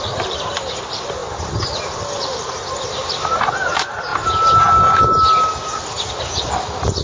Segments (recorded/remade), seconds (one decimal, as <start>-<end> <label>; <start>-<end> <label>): 0.0-7.0 recorded